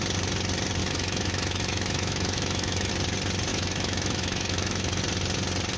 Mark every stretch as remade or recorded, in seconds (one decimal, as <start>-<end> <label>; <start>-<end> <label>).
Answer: 0.0-0.8 recorded; 0.8-2.9 remade; 2.9-3.5 recorded; 3.5-5.0 remade; 5.0-5.8 recorded